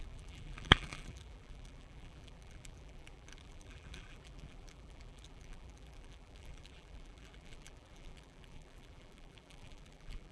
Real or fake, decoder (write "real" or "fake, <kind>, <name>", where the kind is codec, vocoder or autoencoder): fake, vocoder, BigVGAN v2